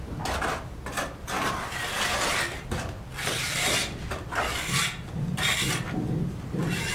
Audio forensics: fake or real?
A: fake